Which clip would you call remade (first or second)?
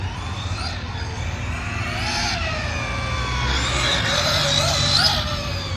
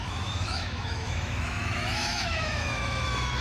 second